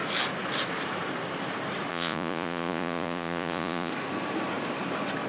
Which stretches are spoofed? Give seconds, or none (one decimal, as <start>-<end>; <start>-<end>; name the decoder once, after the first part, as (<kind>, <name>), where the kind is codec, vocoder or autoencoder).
1.9-3.9 (vocoder, Vocos)